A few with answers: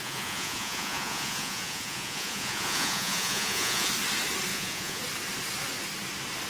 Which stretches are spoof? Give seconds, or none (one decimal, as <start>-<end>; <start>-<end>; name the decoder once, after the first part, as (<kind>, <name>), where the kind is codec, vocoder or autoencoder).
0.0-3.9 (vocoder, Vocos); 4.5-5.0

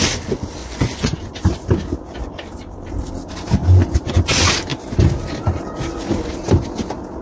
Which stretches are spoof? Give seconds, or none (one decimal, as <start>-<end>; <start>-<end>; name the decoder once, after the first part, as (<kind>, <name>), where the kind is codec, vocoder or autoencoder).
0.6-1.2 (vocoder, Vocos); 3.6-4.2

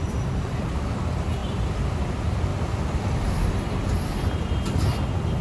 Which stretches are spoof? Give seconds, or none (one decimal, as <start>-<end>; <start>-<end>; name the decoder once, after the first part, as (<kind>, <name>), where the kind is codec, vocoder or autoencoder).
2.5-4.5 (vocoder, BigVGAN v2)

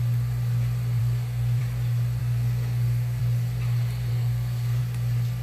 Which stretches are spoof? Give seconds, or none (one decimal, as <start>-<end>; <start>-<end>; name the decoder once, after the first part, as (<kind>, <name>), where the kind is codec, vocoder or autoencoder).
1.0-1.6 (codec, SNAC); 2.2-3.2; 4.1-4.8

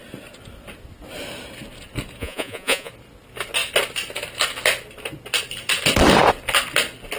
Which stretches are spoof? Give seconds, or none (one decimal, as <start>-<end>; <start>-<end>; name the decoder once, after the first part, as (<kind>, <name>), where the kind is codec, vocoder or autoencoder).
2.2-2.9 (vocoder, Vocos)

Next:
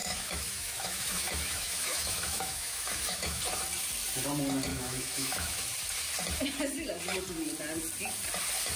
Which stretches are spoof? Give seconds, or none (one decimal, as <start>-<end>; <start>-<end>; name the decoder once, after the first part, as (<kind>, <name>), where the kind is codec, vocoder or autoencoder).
0.0-3.4 (autoencoder, DAC-VAE); 4.7-5.6

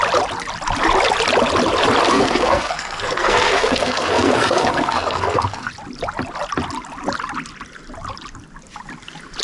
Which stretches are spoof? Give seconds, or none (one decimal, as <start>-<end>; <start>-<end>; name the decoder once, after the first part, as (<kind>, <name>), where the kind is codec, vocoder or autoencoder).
2.1-5.7 (codec, SNAC)